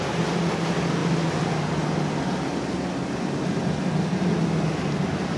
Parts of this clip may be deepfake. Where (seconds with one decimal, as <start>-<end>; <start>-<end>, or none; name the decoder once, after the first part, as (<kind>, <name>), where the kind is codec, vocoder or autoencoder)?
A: none